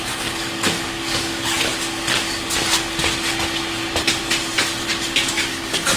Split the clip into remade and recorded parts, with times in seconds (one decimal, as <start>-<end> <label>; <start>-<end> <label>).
0.0-1.7 remade; 1.7-5.3 recorded; 5.3-6.0 remade